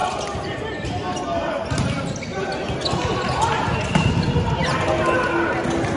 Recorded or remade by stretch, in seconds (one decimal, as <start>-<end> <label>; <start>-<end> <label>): 0.0-6.0 recorded